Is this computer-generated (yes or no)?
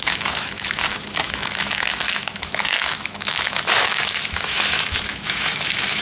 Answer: yes